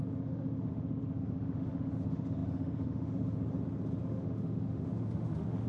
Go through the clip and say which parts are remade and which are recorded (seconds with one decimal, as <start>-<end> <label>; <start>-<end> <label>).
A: 0.0-3.4 remade; 3.4-4.0 recorded; 4.0-5.7 remade